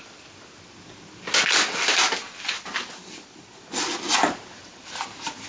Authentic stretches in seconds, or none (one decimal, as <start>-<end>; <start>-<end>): 0.0-5.5